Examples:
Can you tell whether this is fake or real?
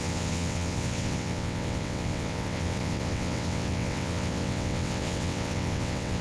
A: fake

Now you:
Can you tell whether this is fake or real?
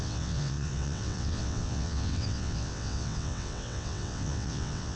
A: fake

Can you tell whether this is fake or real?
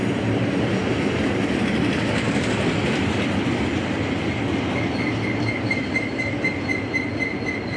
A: real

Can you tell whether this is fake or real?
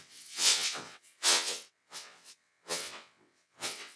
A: fake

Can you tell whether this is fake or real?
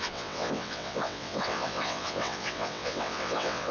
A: fake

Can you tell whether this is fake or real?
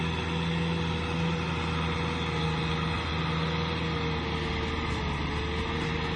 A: real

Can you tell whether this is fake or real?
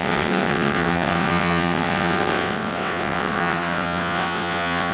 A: fake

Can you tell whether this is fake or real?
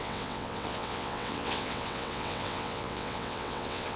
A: fake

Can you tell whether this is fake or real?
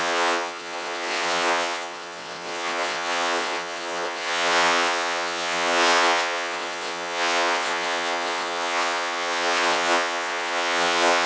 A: fake